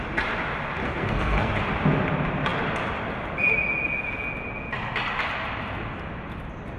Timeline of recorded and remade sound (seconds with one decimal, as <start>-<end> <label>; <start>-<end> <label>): 0.0-0.8 recorded; 0.8-1.5 remade; 1.5-6.8 recorded